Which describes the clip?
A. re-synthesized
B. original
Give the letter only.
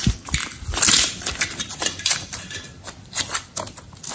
A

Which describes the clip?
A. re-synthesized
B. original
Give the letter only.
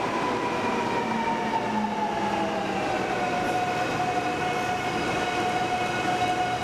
B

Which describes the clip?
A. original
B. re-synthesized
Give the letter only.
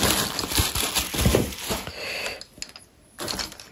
A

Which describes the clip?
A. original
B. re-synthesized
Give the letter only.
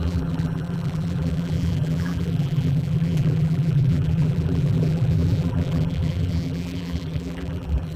B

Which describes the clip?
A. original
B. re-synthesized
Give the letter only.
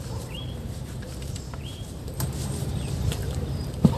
B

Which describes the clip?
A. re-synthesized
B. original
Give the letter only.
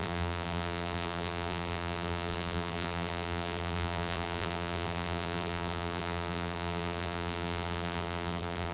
A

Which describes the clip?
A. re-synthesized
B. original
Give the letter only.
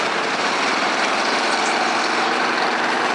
A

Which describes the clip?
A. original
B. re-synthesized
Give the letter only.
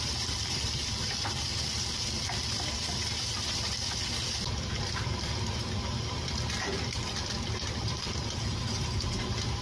B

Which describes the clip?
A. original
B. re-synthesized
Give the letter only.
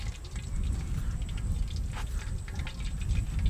A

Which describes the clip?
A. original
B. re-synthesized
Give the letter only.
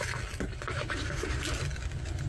A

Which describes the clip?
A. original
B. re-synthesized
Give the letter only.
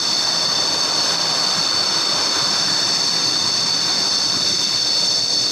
A